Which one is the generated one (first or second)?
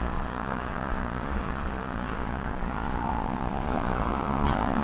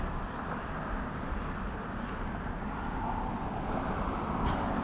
first